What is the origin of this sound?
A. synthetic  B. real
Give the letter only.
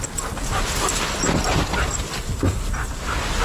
B